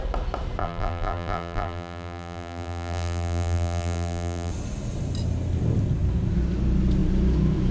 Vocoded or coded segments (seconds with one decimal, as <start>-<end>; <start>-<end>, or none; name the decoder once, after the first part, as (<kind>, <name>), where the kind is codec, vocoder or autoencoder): 0.6-4.5 (vocoder, BigVGAN v2)